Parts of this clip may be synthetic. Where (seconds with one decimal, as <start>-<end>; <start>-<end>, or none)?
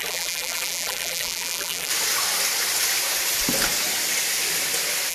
0.0-1.9